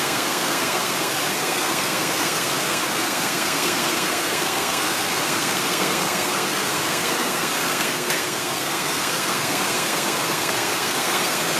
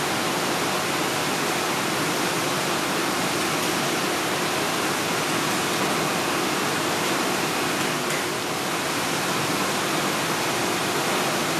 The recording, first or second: second